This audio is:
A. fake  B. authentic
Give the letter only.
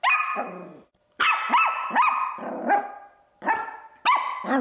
B